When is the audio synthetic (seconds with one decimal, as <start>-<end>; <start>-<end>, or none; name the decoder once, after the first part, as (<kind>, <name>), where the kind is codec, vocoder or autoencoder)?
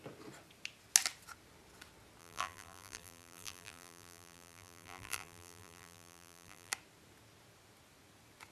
2.2-6.7 (vocoder, BigVGAN v2)